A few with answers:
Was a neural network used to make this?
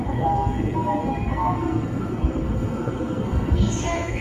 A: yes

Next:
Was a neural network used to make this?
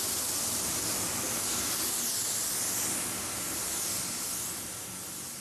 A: no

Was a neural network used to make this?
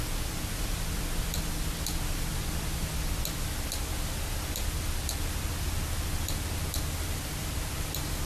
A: no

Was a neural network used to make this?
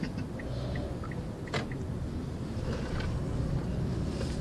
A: no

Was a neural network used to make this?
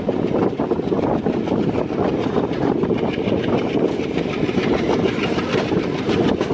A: no